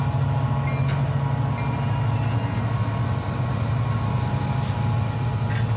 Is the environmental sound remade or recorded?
recorded